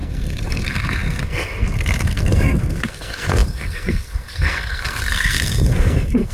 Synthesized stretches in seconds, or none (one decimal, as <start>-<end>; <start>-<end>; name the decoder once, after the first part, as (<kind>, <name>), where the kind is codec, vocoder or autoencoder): 0.0-6.3 (codec, SNAC)